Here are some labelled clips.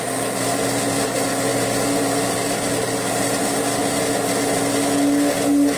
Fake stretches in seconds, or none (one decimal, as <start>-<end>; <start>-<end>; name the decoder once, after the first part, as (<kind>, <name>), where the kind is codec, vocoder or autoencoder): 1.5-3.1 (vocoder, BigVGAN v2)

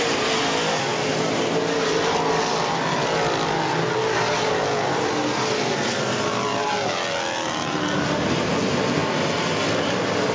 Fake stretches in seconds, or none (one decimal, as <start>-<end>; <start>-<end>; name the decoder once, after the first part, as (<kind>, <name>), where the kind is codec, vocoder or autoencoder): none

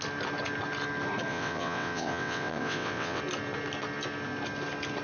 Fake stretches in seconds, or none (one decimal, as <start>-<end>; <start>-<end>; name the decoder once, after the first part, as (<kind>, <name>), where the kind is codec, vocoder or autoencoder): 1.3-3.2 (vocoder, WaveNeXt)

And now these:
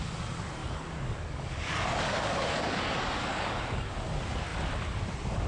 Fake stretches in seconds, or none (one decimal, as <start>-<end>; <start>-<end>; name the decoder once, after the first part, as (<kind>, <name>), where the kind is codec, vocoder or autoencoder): 0.6-3.9 (codec, DAC)